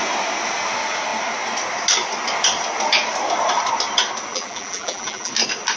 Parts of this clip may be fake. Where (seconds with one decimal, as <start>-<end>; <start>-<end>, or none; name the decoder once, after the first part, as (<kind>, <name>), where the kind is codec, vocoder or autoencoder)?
4.3-5.3 (vocoder, BigVGAN v2)